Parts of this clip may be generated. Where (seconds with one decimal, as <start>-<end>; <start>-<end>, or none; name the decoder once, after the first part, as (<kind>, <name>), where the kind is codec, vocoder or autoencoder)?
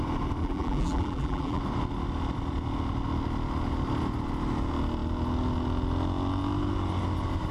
0.4-1.6 (vocoder, BigVGAN v2)